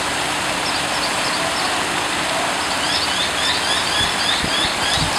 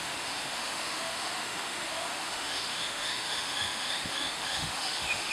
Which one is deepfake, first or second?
second